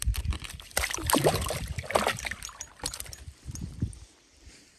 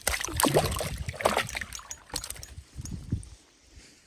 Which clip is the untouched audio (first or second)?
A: second